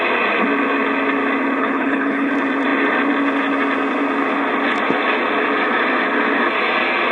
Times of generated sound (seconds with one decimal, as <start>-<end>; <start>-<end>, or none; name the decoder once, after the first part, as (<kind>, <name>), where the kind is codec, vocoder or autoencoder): 1.6-2.3 (codec, HILCodec)